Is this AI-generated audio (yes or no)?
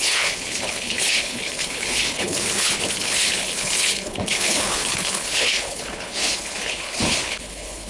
yes